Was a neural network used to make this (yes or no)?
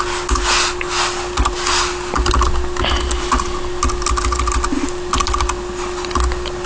no